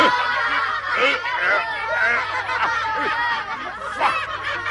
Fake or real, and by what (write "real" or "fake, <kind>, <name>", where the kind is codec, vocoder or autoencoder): real